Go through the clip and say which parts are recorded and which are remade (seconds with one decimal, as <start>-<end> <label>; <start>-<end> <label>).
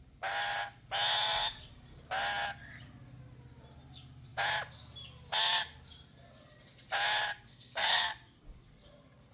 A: 0.0-7.5 recorded; 7.5-8.0 remade; 8.0-9.3 recorded